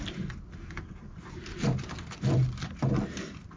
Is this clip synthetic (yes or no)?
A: no